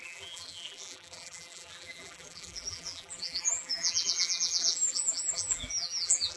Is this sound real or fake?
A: fake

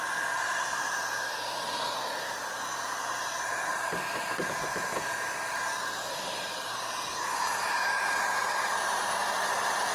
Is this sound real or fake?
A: fake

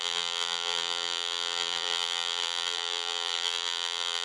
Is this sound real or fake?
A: fake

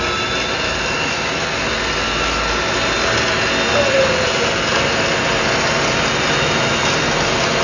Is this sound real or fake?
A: real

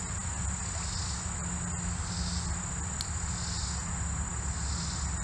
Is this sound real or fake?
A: real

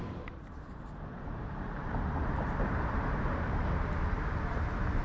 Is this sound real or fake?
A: fake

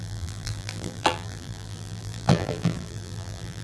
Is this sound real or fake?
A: fake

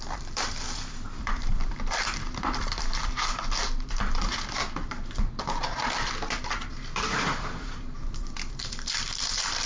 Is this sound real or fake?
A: fake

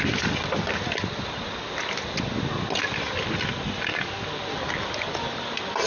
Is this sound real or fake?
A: real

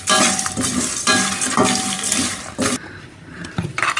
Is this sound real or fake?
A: fake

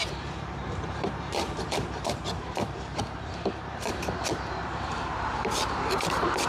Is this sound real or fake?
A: fake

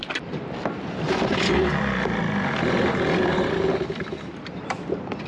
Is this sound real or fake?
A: real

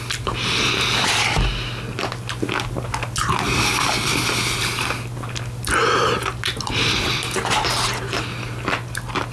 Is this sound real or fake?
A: real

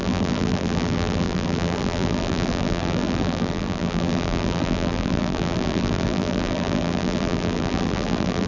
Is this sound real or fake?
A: fake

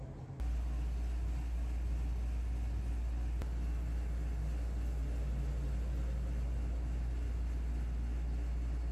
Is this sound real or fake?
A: real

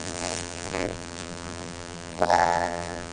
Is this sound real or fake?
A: fake